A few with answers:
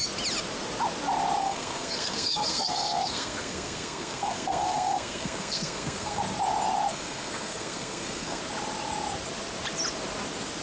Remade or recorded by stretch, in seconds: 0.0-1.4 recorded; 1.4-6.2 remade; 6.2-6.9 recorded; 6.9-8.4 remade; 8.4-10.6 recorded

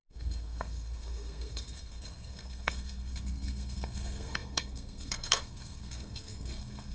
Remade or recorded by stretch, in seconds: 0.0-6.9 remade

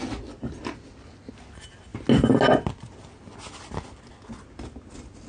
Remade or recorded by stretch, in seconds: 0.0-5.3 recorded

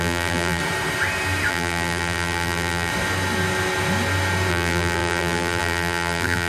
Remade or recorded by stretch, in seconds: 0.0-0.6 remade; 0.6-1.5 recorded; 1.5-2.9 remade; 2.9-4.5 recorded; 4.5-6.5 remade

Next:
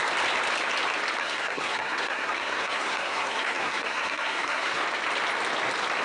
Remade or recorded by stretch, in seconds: 0.0-1.2 recorded; 1.2-4.8 remade; 4.8-6.0 recorded

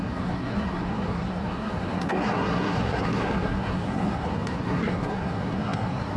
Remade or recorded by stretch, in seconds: 0.0-6.2 remade

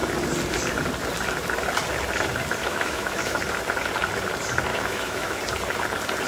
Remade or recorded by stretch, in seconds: 0.0-2.6 recorded; 2.6-3.4 remade; 3.4-4.7 recorded; 4.7-5.4 remade; 5.4-6.3 recorded

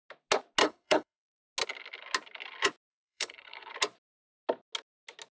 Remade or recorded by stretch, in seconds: 0.0-0.6 recorded; 0.6-1.4 remade; 1.4-2.9 recorded; 2.9-3.7 remade; 3.7-5.3 recorded